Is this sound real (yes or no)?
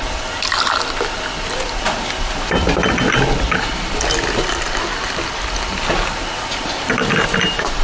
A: yes